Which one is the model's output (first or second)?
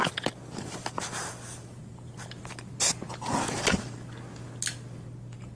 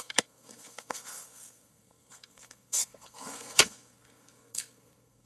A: second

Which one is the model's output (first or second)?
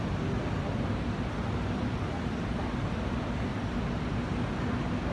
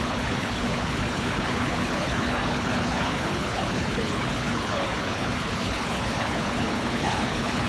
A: second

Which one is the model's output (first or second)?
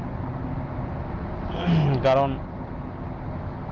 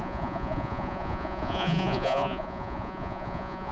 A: second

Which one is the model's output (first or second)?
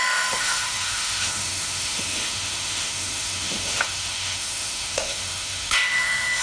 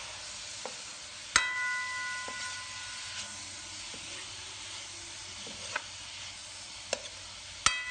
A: first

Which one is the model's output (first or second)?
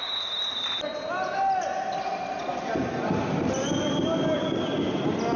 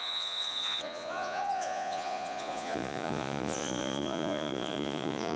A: second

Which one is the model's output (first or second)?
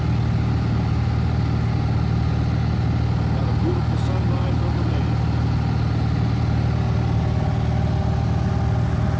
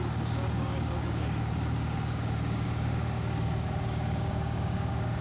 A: second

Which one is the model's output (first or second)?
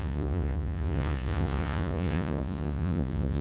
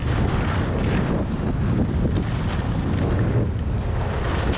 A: first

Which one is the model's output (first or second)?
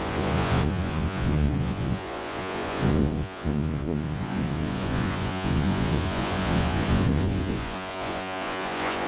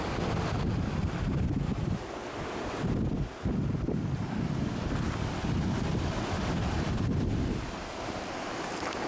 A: first